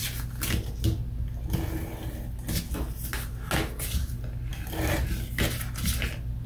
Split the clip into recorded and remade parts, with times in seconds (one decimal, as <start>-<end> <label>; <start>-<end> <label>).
0.0-6.5 recorded